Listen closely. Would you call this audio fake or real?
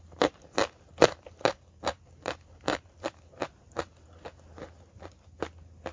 real